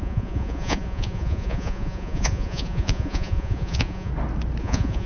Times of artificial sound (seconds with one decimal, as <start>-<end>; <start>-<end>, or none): 0.0-4.1; 4.6-5.1